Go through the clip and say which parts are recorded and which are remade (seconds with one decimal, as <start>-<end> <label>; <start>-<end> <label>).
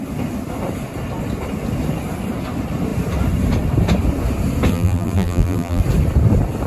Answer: 0.0-4.7 recorded; 4.7-5.8 remade; 5.8-6.7 recorded